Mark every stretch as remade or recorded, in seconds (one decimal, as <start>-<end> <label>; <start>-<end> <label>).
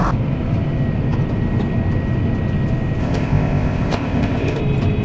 0.0-3.0 recorded; 3.0-4.6 remade; 4.6-5.0 recorded